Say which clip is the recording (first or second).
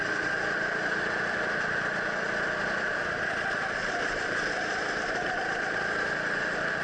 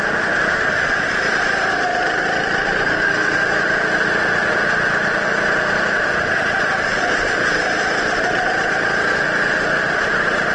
second